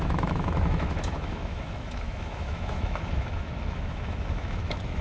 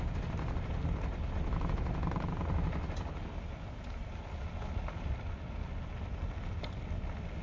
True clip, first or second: second